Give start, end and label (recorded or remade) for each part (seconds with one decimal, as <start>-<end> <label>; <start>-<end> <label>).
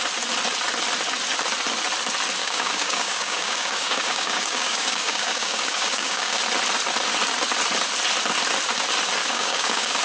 0.0-2.4 recorded; 2.4-6.4 remade; 6.4-9.2 recorded; 9.2-10.0 remade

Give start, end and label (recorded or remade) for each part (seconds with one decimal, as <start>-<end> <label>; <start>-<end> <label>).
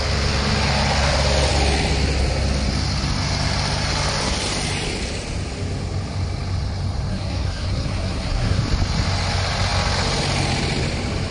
0.0-7.1 recorded; 7.1-8.6 remade; 8.6-11.3 recorded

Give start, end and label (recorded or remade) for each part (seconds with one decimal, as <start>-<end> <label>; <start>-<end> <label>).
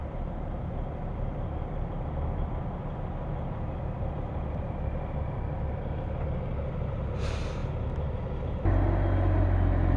0.0-10.0 recorded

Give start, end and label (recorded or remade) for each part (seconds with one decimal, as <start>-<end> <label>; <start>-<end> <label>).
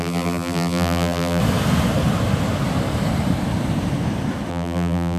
0.0-1.4 remade; 1.4-4.5 recorded; 4.5-5.2 remade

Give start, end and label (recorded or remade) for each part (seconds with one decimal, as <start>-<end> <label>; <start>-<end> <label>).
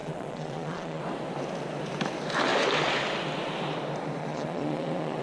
0.0-1.0 remade; 1.0-4.2 recorded; 4.2-5.2 remade